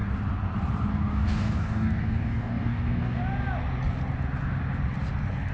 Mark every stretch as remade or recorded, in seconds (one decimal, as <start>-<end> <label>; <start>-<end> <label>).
0.0-0.9 recorded; 0.9-3.2 remade; 3.2-5.5 recorded